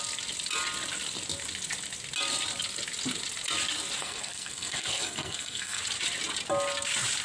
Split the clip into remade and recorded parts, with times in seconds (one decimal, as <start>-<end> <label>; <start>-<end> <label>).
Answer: 0.0-4.0 recorded; 4.0-5.8 remade; 5.8-7.2 recorded